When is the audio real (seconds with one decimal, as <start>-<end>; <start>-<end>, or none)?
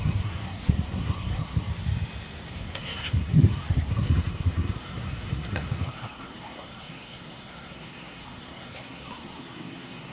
1.7-2.5